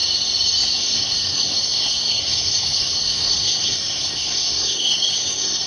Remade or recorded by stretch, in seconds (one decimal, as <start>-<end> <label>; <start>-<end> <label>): 0.0-0.8 recorded; 0.8-5.7 remade